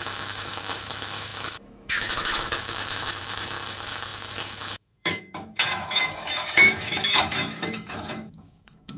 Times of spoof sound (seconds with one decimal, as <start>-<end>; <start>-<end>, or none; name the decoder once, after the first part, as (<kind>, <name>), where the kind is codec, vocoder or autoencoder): 0.0-9.0 (autoencoder, DAC-VAE)